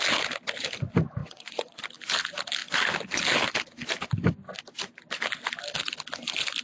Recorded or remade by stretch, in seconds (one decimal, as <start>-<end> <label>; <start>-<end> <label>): 0.0-1.2 recorded; 1.2-1.8 remade; 1.8-6.6 recorded